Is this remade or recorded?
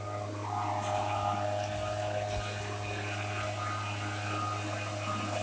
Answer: recorded